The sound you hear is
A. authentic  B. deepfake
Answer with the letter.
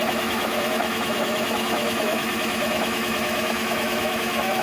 B